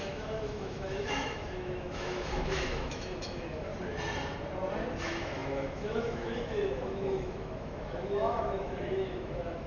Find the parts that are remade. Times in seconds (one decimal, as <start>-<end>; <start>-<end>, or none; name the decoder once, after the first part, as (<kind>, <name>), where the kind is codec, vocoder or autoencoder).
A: 0.0-3.7 (autoencoder, DAC-VAE); 5.0-9.7